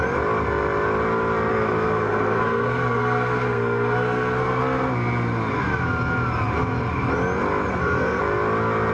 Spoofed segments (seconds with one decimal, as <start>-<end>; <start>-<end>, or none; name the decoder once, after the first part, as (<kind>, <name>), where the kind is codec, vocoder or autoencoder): 1.5-4.6 (codec, SNAC); 7.7-8.2